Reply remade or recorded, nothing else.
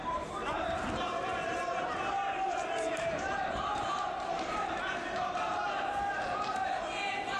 remade